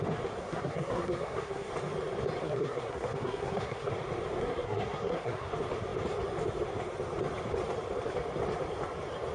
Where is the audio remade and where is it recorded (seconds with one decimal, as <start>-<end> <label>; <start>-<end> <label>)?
0.0-0.4 recorded; 0.4-1.7 remade; 1.7-2.4 recorded; 2.4-3.9 remade; 3.9-4.4 recorded; 4.4-5.5 remade; 5.5-9.3 recorded